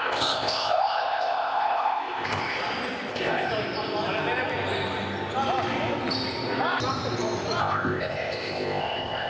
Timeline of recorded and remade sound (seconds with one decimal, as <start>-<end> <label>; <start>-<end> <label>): 0.0-2.6 remade; 2.6-3.1 recorded; 3.1-3.5 remade; 3.5-7.6 recorded; 7.6-9.3 remade